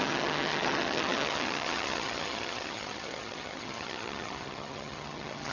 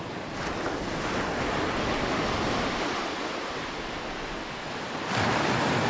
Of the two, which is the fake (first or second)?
first